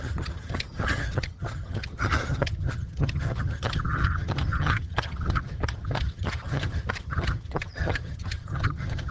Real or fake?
fake